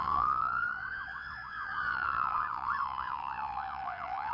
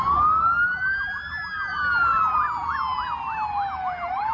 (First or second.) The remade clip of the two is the first